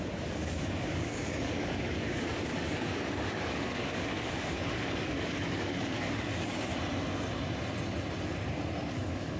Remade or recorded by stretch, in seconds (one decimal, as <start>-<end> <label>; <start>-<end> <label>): 0.0-6.7 remade; 6.7-8.9 recorded; 8.9-9.4 remade